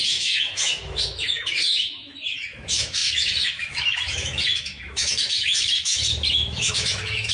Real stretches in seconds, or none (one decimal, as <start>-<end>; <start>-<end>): none